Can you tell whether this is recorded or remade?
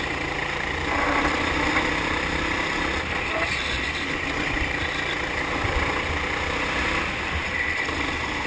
recorded